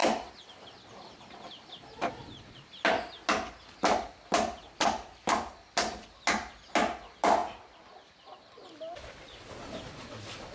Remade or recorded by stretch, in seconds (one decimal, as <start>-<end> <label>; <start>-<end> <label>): 0.0-10.5 recorded